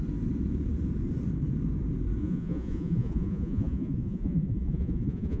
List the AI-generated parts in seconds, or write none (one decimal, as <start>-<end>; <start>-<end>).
2.2-5.4